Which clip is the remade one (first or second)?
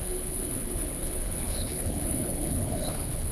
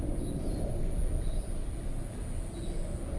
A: first